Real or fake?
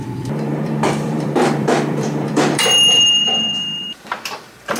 fake